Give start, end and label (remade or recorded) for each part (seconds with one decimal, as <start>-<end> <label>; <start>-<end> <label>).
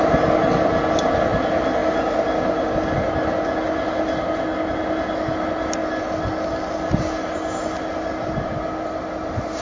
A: 0.0-9.6 recorded